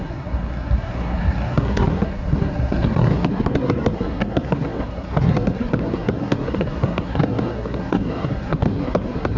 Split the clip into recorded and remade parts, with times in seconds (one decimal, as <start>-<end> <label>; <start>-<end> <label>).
0.0-9.4 remade